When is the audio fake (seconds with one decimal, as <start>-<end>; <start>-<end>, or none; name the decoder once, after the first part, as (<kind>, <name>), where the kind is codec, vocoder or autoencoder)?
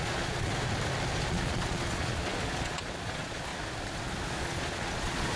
0.0-0.5 (vocoder, Vocos); 1.3-3.5; 4.4-5.4